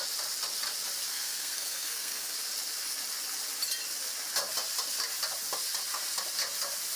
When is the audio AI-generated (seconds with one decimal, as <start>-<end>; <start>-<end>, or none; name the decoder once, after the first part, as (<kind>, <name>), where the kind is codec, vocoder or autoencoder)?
1.1-2.3 (codec, SNAC)